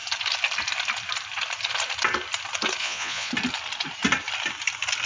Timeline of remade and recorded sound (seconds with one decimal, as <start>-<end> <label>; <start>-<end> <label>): 0.0-2.8 recorded; 2.8-3.3 remade; 3.3-5.1 recorded